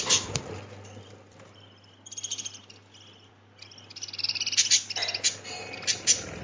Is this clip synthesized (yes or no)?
no